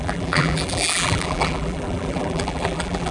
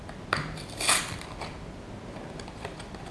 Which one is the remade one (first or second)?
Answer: first